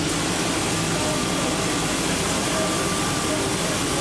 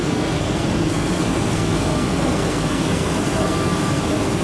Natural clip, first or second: first